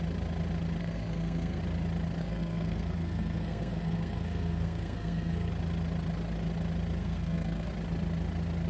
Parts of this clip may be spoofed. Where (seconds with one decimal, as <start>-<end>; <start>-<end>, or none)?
0.8-1.6; 2.2-5.5; 7.0-7.7